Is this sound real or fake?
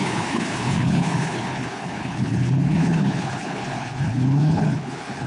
fake